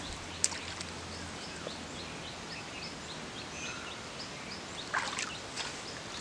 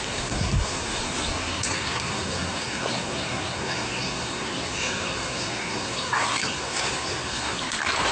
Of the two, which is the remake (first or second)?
second